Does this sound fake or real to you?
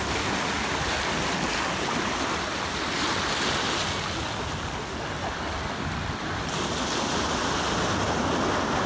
real